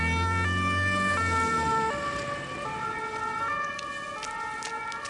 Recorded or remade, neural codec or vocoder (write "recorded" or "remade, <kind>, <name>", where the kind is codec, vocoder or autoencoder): recorded